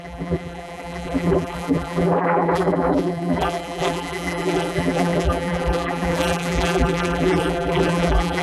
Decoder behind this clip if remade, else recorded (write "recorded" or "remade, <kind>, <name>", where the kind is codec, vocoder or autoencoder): remade, vocoder, BigVGAN v2